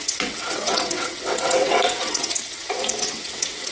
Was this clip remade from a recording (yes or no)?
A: yes